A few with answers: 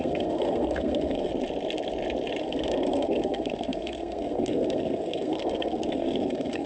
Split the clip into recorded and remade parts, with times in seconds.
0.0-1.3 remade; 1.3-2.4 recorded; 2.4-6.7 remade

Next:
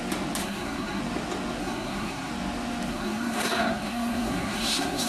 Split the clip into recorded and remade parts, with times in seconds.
0.0-0.4 recorded; 0.4-1.0 remade; 1.0-1.6 recorded; 1.6-2.3 remade; 2.3-2.9 recorded; 2.9-5.1 remade

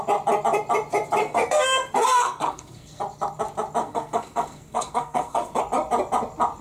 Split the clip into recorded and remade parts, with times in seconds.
0.0-1.2 recorded; 1.2-3.0 remade; 3.0-3.8 recorded; 3.8-5.6 remade; 5.6-6.6 recorded

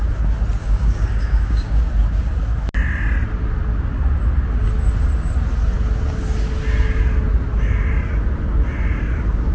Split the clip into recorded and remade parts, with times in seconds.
0.0-0.6 recorded; 0.6-1.8 remade; 1.8-9.5 recorded

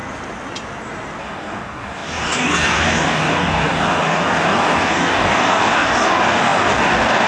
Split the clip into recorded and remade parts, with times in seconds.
0.0-1.2 recorded; 1.2-7.3 remade

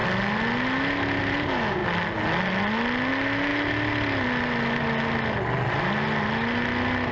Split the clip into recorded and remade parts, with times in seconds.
0.0-7.1 recorded

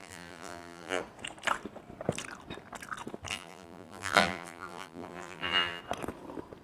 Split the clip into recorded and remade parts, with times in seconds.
0.0-1.0 remade; 1.0-3.3 recorded; 3.3-5.8 remade; 5.8-6.6 recorded